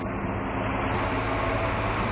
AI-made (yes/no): no